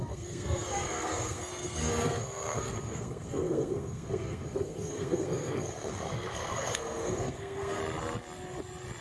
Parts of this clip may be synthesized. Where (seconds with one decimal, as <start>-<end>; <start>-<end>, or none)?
0.0-7.8